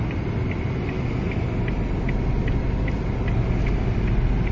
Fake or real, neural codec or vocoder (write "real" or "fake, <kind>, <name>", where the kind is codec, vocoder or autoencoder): real